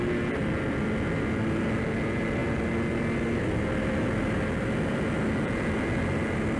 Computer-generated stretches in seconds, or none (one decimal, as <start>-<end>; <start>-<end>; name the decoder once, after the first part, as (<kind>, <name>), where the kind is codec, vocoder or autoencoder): none